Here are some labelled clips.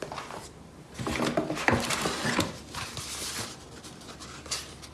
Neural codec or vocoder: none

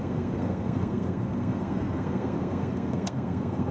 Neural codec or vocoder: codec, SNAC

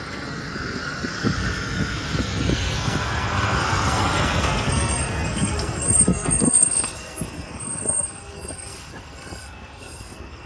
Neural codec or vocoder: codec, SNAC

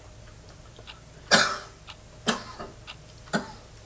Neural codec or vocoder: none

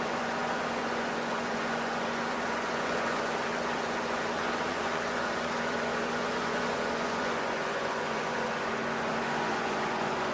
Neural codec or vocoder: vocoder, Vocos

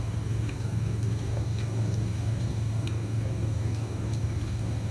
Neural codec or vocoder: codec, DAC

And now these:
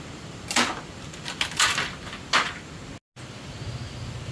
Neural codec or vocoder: none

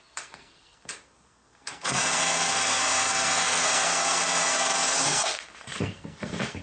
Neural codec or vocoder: codec, SNAC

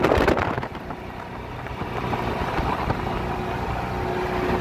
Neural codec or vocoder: none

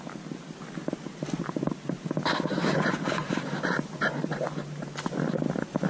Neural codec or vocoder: none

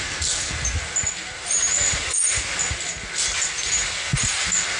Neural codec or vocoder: none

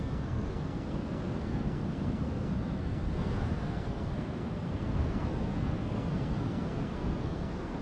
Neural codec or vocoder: codec, SNAC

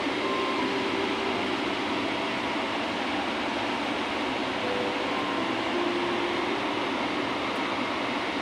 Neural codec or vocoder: none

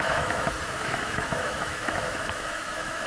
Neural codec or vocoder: autoencoder, DAC-VAE